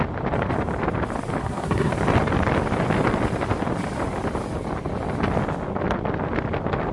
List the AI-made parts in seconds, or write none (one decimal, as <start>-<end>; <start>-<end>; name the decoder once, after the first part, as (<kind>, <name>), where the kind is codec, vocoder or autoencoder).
1.4-1.9 (codec, SNAC)